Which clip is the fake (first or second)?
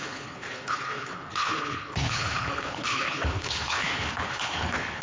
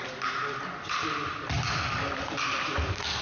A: first